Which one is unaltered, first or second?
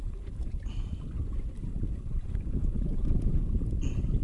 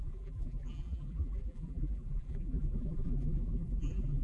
first